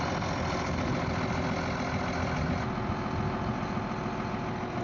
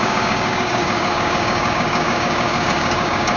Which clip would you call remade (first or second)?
second